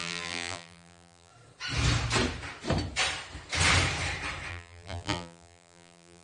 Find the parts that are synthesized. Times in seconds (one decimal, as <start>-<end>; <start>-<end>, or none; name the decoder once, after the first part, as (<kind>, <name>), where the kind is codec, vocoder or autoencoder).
0.0-1.3 (vocoder, BigVGAN v2); 4.5-6.2